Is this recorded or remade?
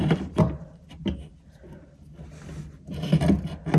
recorded